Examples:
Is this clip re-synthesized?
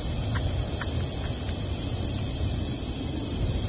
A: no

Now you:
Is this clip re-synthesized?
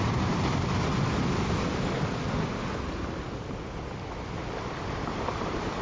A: no